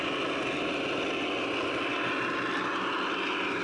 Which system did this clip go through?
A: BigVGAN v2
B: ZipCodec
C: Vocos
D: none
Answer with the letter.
D